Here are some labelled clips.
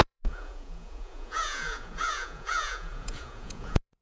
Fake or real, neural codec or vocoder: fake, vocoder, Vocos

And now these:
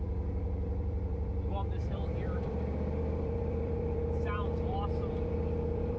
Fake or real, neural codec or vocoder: fake, vocoder, BigVGAN v2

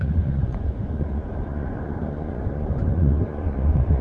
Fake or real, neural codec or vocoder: fake, vocoder, Vocos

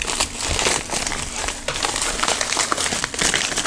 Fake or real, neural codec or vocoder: real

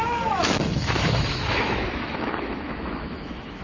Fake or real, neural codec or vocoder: fake, autoencoder, DAC-VAE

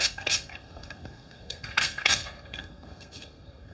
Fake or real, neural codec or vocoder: fake, codec, SNAC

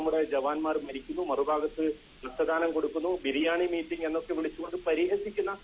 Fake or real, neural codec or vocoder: real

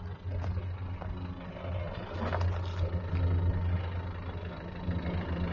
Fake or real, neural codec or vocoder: real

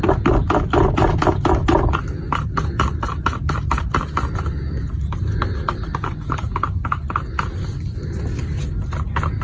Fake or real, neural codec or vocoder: real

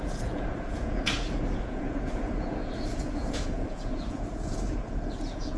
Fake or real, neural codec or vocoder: fake, vocoder, Vocos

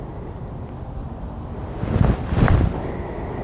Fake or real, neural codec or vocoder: real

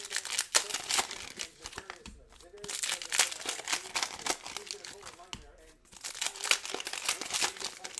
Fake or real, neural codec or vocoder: real